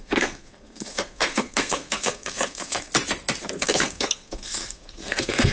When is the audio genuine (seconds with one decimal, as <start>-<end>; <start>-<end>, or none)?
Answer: 2.9-3.4